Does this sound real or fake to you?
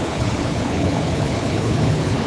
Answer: fake